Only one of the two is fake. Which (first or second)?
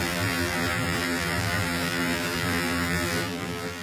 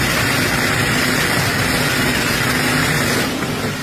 first